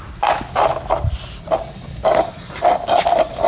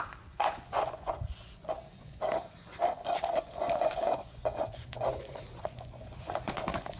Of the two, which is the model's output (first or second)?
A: second